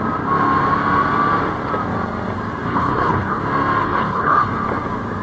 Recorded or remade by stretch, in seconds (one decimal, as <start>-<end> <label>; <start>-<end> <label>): 0.0-2.7 recorded; 2.7-3.4 remade; 3.4-3.8 recorded; 3.8-4.5 remade; 4.5-5.2 recorded